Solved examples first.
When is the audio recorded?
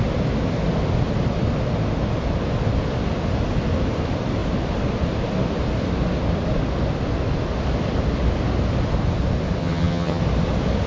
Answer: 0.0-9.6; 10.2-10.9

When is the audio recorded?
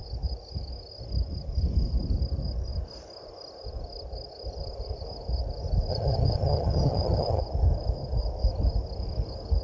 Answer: 0.0-5.9; 7.4-9.6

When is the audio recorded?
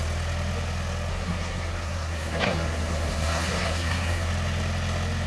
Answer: 0.0-1.1; 4.3-5.3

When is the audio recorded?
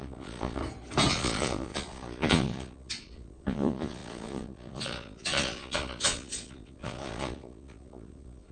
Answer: 0.6-1.1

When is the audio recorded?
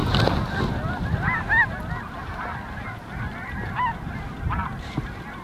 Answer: 0.0-5.4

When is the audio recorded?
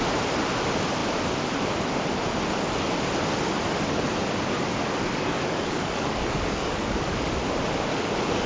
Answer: 0.0-5.1; 7.3-7.9